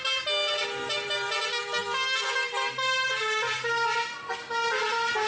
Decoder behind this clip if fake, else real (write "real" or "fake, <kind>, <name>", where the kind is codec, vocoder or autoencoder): real